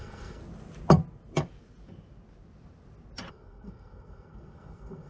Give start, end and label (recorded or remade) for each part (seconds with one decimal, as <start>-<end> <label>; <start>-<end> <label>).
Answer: 0.0-0.4 remade; 0.4-3.3 recorded; 3.3-5.1 remade